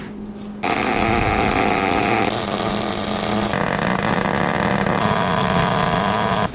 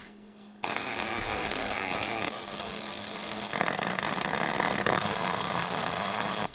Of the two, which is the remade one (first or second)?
second